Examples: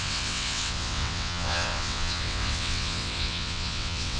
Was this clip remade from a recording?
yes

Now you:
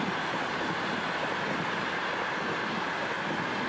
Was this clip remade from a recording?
no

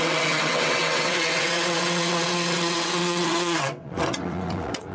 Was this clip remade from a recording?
yes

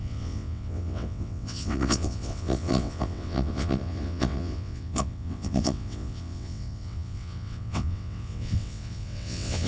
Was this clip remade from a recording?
yes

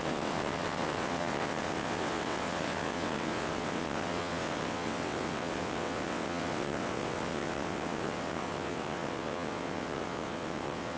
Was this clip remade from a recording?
yes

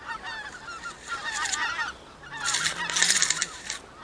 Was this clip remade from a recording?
no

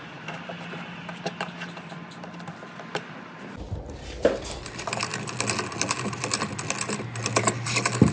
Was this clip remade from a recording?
no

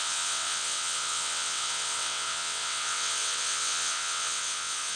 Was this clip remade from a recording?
yes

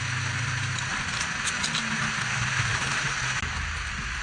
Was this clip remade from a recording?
no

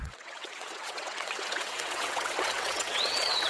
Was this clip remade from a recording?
yes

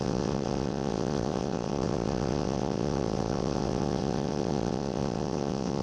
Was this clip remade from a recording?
yes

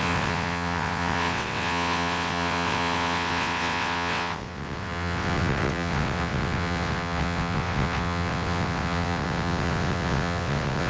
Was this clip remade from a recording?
yes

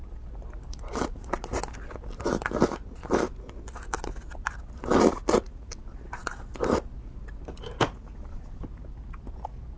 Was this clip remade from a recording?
no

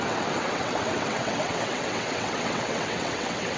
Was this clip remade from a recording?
yes